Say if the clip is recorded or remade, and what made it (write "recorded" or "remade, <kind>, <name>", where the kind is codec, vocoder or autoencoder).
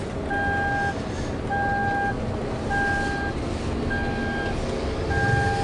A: recorded